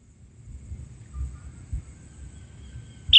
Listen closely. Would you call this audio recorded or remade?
recorded